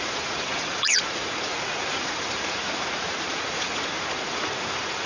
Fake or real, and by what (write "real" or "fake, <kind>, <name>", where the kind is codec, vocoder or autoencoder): fake, vocoder, Vocos